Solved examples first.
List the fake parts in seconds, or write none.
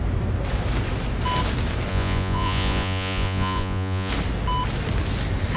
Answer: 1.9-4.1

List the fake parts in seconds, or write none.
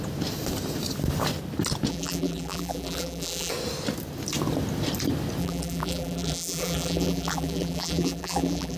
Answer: 1.9-3.5; 5.4-8.8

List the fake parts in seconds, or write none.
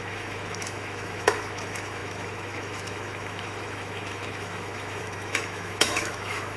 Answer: 0.0-6.6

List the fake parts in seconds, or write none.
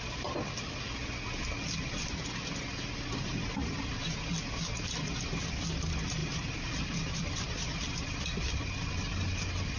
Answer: 6.2-7.9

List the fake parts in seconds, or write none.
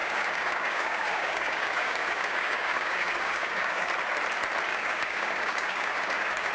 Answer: 0.0-3.9; 4.7-6.5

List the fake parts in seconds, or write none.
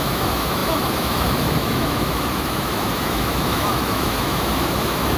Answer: 0.0-5.2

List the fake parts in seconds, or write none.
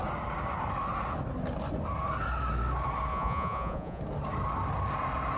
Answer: 3.1-4.0